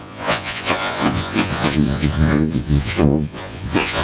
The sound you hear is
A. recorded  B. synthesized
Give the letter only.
B